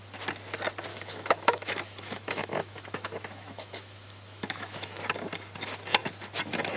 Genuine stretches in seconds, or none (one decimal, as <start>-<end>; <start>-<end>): 0.0-0.9; 5.0-6.8